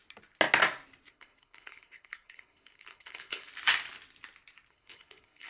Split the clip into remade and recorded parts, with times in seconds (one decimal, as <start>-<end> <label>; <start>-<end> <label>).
0.0-1.1 recorded; 1.1-3.5 remade; 3.5-4.7 recorded; 4.7-5.5 remade

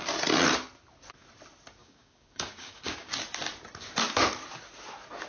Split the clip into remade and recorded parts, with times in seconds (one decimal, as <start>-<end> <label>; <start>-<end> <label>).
0.0-1.8 recorded; 1.8-3.1 remade; 3.1-5.3 recorded

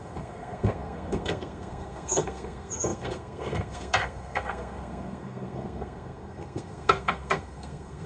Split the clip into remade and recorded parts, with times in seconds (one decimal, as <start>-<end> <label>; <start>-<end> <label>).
0.0-8.1 remade

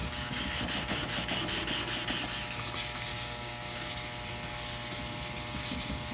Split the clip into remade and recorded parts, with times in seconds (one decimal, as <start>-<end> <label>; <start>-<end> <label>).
0.0-0.5 remade; 0.5-3.1 recorded; 3.1-3.9 remade; 3.9-6.1 recorded

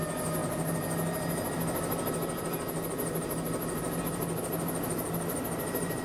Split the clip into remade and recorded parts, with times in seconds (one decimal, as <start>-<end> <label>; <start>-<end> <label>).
0.0-6.0 recorded